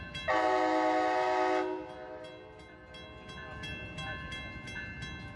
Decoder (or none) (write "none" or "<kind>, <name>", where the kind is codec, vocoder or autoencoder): none